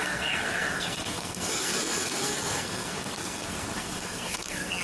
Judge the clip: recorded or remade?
remade